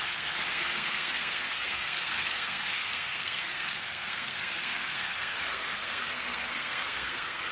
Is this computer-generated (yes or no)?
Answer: yes